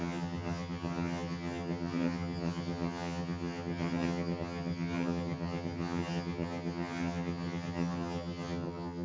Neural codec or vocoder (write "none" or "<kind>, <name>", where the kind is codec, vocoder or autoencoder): vocoder, HiFi-GAN